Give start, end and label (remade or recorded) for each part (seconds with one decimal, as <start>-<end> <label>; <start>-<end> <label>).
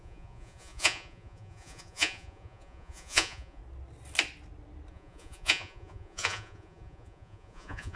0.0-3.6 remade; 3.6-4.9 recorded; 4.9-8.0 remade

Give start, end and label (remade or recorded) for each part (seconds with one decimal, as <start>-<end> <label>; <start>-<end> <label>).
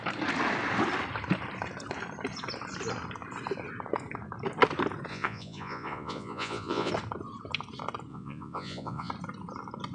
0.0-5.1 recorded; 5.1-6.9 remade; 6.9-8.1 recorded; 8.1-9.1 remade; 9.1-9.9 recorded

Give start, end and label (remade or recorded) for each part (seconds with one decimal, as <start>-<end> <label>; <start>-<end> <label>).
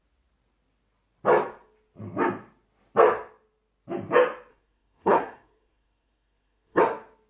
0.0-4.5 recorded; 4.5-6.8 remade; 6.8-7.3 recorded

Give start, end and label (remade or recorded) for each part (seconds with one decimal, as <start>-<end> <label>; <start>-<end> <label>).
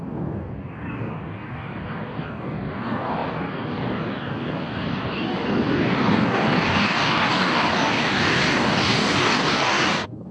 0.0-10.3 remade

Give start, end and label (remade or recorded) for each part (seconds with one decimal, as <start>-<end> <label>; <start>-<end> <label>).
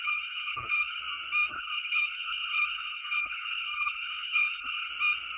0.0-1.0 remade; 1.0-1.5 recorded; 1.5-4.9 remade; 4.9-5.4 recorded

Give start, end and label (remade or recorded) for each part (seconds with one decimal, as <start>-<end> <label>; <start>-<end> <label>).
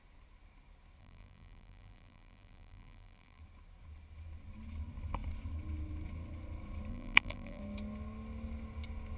0.0-1.0 recorded; 1.0-3.4 remade; 3.4-6.9 recorded; 6.9-7.6 remade; 7.6-9.2 recorded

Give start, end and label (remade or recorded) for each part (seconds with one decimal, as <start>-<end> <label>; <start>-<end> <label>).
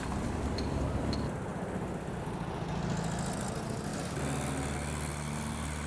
0.0-5.9 recorded